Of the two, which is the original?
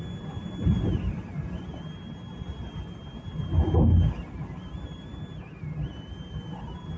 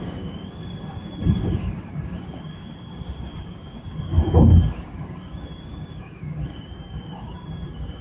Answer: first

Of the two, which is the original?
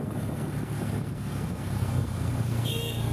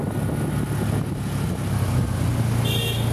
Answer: second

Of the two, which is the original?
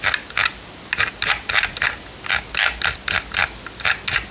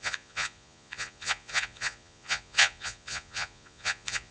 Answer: first